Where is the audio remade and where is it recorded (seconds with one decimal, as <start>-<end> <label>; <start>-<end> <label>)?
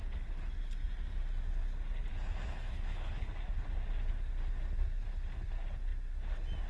0.0-2.5 recorded; 2.5-3.3 remade; 3.3-6.7 recorded